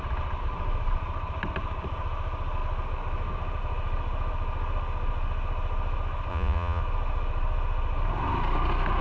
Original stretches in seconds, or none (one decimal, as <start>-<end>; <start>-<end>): 0.0-6.3; 6.8-9.0